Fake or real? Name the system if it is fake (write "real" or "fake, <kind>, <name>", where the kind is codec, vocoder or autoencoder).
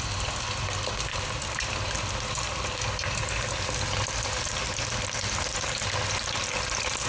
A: real